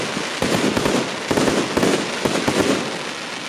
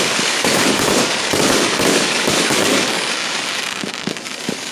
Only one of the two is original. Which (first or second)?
first